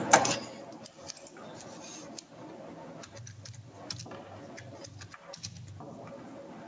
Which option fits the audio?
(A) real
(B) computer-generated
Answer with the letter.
A